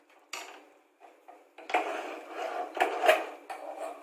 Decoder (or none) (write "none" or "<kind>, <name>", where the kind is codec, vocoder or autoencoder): none